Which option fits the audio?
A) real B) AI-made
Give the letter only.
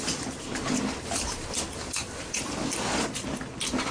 B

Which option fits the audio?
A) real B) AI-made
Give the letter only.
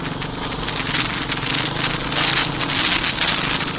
A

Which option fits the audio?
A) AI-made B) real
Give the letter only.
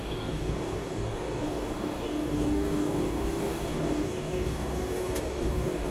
A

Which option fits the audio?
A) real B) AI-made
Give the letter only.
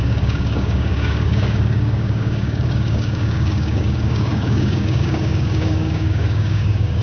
B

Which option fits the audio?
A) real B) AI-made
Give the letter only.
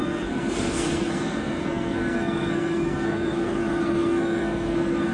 B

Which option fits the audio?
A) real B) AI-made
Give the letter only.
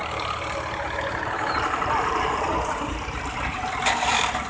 B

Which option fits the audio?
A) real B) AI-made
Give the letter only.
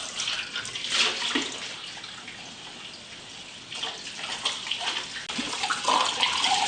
A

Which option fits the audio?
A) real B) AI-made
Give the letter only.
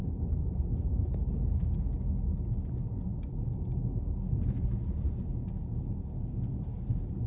A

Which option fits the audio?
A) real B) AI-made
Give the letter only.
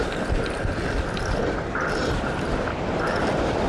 A